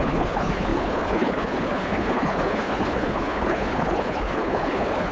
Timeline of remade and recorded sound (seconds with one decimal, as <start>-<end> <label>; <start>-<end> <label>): 0.0-5.1 remade